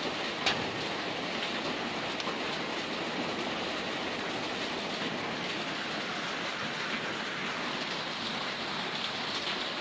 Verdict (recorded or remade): recorded